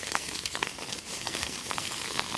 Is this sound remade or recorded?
remade